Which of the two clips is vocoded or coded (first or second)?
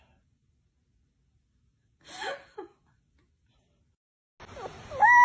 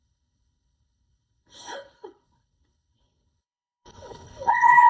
second